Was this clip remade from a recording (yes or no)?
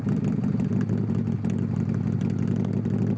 no